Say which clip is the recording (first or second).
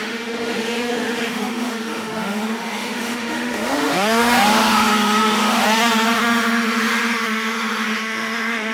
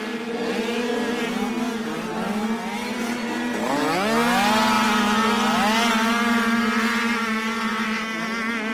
second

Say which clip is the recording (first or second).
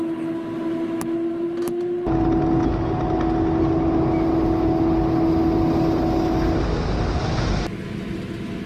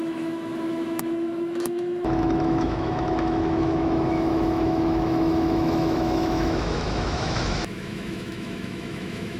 first